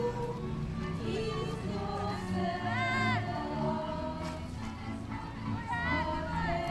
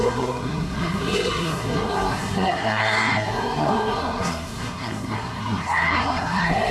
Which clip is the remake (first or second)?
second